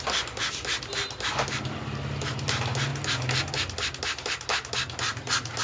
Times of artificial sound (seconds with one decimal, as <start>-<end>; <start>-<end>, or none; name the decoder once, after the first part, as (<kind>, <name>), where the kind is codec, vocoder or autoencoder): none